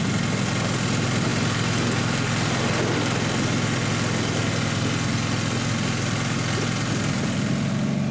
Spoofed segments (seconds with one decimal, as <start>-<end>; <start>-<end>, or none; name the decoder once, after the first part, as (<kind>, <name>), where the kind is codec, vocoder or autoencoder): none